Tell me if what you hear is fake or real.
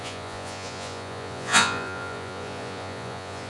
fake